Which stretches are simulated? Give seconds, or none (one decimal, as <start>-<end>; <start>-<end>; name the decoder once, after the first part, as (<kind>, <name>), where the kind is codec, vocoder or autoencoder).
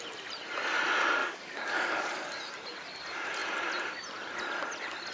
1.2-2.5 (codec, DAC)